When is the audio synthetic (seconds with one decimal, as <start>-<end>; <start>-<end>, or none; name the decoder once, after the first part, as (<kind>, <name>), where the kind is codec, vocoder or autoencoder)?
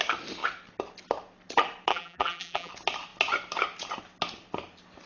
1.9-2.7 (vocoder, BigVGAN v2)